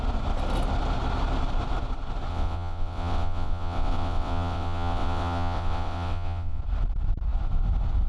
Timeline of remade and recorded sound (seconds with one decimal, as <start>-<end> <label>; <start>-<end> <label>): 0.0-2.3 recorded; 2.3-6.6 remade; 6.6-8.1 recorded